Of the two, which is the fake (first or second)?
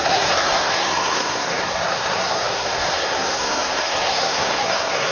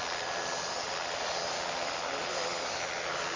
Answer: first